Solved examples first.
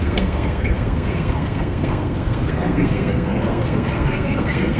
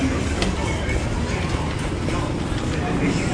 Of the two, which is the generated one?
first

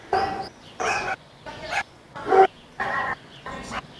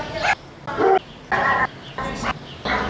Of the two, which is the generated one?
first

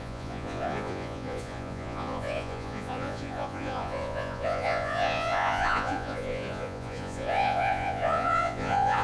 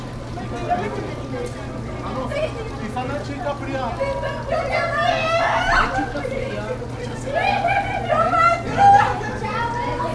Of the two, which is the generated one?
first